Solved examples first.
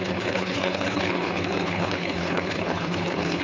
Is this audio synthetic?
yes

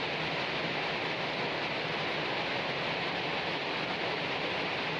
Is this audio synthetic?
no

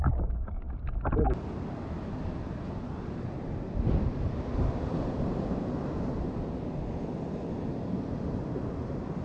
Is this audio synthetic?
no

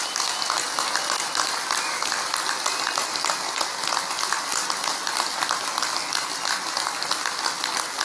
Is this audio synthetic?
no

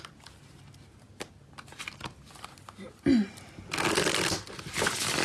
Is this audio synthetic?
no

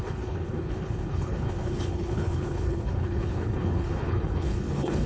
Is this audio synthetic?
yes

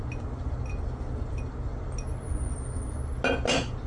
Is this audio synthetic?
no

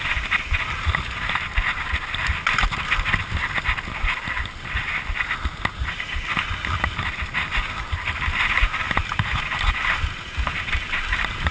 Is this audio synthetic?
no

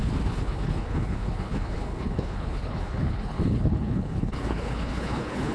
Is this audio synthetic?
yes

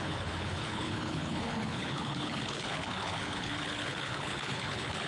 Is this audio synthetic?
yes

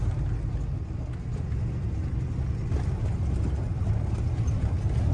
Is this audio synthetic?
no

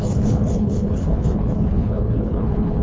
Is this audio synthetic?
yes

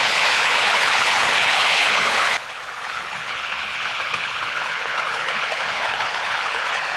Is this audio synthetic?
yes